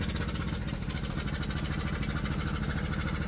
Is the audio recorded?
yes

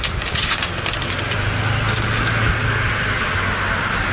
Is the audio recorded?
yes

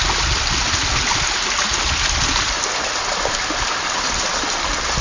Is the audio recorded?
yes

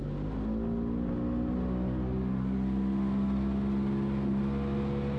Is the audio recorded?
yes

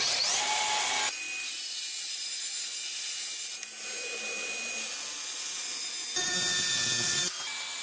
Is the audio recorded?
yes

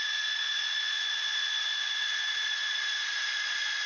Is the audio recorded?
no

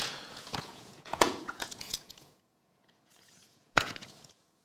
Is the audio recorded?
no